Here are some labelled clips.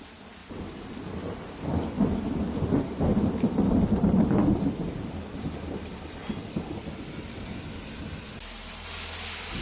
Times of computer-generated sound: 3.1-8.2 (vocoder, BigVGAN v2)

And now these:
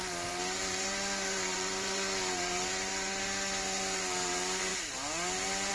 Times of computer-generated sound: 0.0-5.7 (vocoder, BigVGAN v2)